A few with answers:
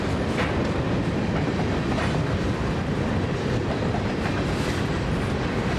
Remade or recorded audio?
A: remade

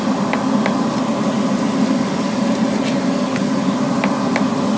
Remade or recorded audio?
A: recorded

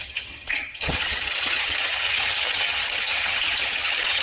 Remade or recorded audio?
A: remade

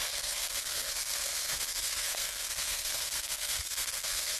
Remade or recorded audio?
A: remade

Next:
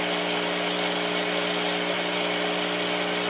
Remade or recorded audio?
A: recorded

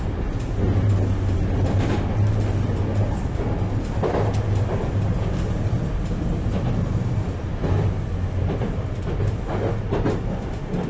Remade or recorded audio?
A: recorded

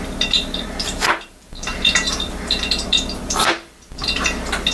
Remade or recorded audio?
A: remade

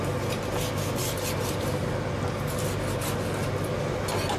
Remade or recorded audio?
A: recorded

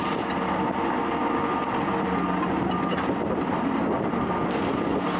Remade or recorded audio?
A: recorded